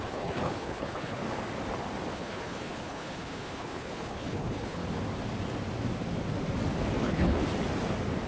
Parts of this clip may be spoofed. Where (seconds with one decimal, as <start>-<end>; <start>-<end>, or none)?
0.0-1.2; 2.1-4.8; 7.0-7.4